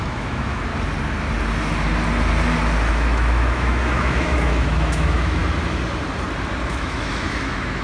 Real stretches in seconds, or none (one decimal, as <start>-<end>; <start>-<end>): 0.7-2.9; 5.4-6.7